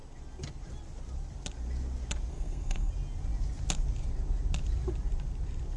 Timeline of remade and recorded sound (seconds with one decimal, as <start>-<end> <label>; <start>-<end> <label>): 0.0-2.3 recorded; 2.3-2.9 remade; 2.9-5.8 recorded